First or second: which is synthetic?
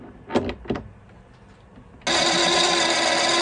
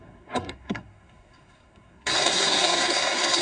second